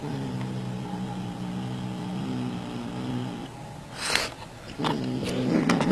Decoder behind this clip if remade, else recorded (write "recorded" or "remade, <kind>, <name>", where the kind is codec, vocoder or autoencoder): recorded